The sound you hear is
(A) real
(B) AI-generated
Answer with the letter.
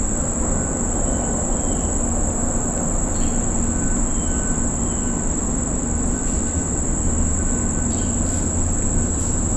A